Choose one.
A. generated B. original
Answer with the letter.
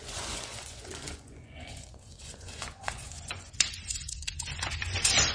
A